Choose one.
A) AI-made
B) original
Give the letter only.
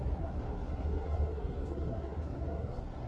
A